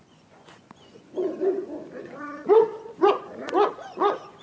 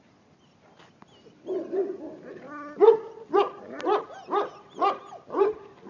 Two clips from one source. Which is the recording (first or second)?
second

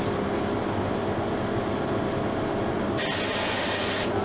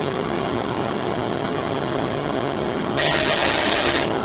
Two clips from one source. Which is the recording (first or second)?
first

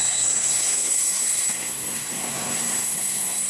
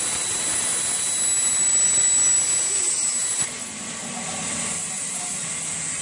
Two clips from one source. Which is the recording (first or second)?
second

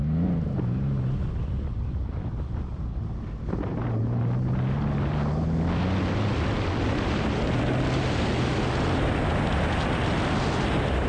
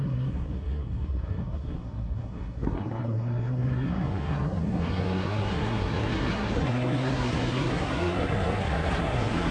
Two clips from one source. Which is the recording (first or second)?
first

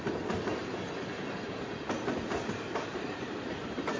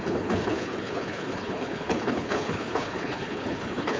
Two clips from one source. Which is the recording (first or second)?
first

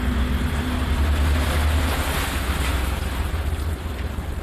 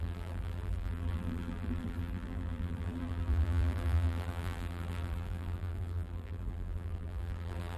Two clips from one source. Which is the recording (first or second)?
first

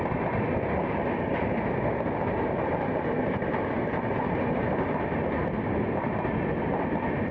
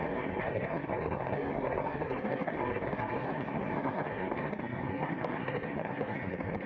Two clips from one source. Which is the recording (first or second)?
first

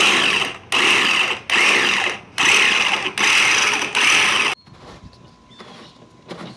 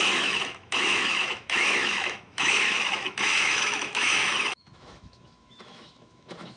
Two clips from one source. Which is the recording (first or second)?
first